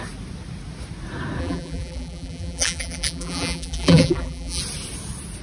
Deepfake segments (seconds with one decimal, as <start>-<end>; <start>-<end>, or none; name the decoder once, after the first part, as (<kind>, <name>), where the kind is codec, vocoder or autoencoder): 1.4-4.6 (vocoder, BigVGAN v2)